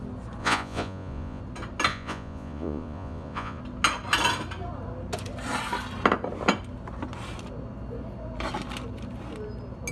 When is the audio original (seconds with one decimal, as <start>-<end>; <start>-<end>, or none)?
0.0-0.4; 1.4-1.9; 3.6-9.9